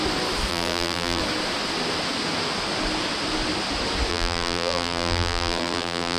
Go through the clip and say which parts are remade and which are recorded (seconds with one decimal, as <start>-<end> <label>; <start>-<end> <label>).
0.0-0.5 recorded; 0.5-1.2 remade; 1.2-4.1 recorded; 4.1-6.2 remade